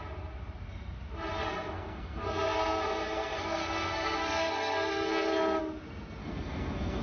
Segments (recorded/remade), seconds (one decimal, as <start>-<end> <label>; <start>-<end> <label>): 0.0-1.4 recorded; 1.4-5.6 remade; 5.6-6.2 recorded; 6.2-7.0 remade